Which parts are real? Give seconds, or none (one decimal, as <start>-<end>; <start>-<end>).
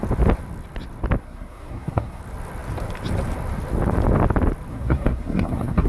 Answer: 0.0-1.2; 2.2-4.7